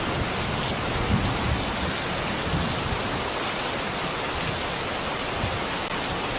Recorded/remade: recorded